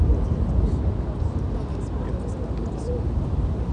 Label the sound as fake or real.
real